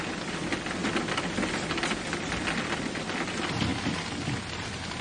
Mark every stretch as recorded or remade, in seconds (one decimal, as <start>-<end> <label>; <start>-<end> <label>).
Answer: 0.0-5.0 recorded